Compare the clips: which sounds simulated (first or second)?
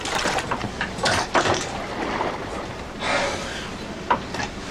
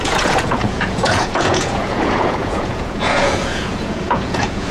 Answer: second